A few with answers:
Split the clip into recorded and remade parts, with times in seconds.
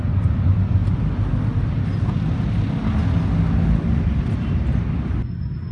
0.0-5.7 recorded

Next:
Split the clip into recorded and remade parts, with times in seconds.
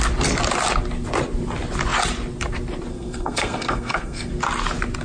0.0-2.9 recorded; 2.9-4.3 remade; 4.3-5.0 recorded